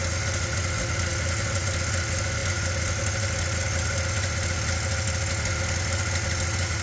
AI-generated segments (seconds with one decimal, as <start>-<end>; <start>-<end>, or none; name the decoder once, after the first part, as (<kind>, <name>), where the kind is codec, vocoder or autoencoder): none